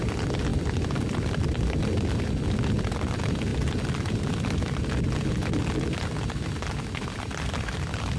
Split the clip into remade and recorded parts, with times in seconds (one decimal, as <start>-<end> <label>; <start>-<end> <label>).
0.0-8.2 recorded